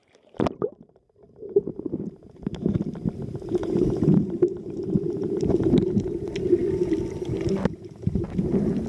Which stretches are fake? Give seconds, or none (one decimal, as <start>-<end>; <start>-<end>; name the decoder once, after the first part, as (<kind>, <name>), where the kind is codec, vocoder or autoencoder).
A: 0.0-2.6 (vocoder, BigVGAN v2); 3.6-6.1